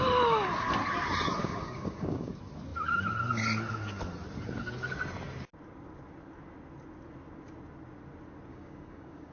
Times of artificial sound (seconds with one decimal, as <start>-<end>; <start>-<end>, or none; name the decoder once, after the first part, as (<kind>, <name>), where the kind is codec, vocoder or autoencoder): 1.4-2.3 (codec, DAC); 8.5-9.3